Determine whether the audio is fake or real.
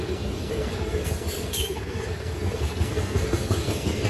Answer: fake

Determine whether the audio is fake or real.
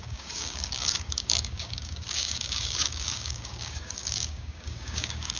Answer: fake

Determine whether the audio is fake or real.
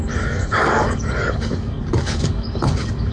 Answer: fake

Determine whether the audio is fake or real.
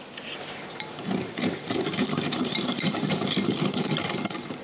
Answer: fake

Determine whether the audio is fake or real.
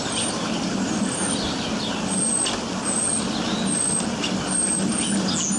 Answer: real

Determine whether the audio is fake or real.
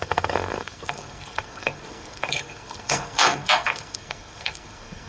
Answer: fake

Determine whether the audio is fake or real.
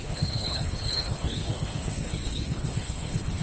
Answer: fake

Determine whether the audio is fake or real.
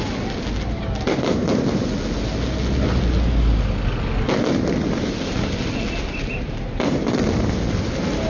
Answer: real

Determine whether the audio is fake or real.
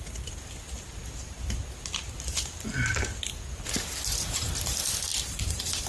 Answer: real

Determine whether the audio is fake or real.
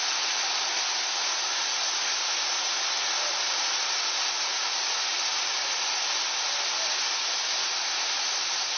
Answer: real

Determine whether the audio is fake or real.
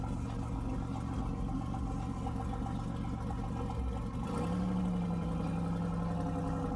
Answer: real